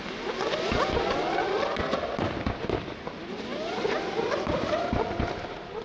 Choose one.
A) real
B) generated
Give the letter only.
A